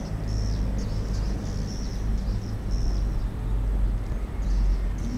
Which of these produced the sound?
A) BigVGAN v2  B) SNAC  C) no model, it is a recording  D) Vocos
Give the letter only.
C